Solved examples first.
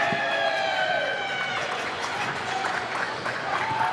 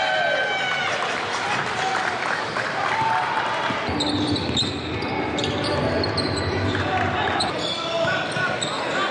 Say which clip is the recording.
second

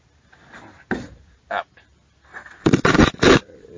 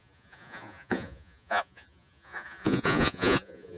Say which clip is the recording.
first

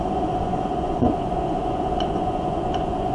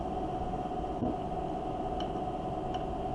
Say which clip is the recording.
second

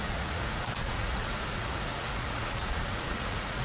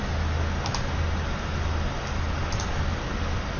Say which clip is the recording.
second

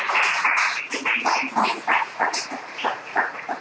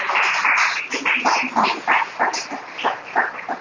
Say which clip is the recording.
second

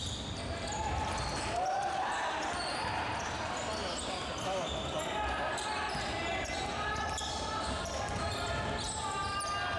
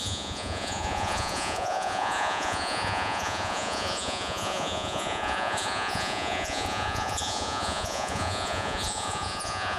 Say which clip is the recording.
first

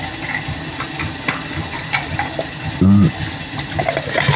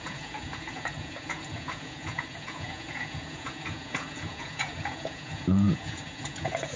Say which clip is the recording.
first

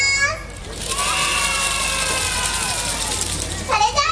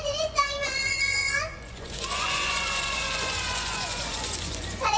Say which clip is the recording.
first